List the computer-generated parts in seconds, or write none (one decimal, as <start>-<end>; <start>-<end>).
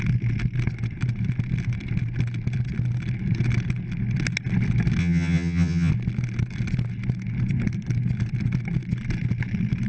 5.0-5.9